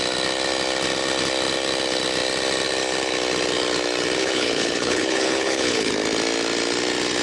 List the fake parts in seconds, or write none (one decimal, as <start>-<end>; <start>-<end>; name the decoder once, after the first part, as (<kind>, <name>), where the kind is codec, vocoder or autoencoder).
4.2-5.9 (codec, HILCodec)

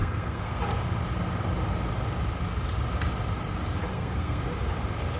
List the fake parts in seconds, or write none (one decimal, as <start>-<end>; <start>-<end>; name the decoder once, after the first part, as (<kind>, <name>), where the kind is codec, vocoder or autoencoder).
0.0-0.6 (codec, SNAC); 3.9-4.4

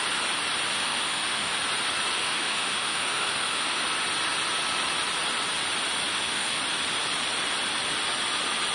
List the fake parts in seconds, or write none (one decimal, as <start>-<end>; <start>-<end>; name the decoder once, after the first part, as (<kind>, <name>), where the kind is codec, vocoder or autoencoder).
0.8-1.6 (autoencoder, DAC-VAE); 2.2-3.8; 6.1-6.6

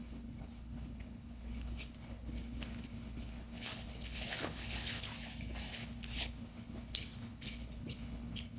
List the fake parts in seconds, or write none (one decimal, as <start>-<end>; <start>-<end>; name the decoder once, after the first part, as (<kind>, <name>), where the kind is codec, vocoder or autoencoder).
0.0-5.1 (codec, HILCodec); 5.7-8.6